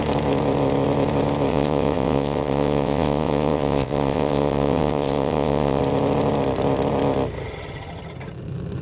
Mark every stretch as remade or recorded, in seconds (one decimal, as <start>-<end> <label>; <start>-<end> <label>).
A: 0.0-1.5 recorded; 1.5-5.8 remade; 5.8-8.8 recorded